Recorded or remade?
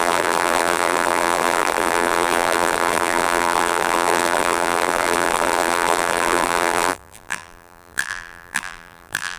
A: remade